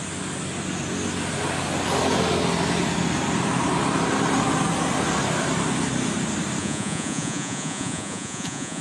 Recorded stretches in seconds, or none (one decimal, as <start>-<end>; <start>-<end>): 0.0-6.6